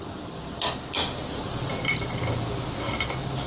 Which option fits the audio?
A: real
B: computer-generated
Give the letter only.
A